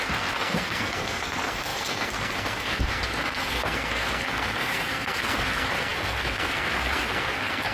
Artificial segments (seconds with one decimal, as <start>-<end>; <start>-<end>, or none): 0.0-7.7